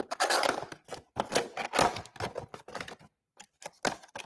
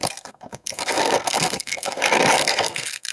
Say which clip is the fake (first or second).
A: second